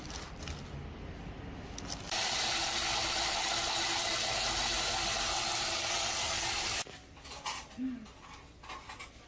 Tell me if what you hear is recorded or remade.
recorded